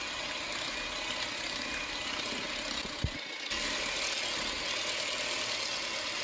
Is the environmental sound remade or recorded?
recorded